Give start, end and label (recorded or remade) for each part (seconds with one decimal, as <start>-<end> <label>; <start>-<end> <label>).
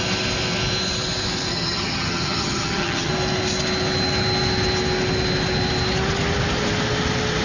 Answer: 0.0-1.5 recorded; 1.5-3.1 remade; 3.1-7.4 recorded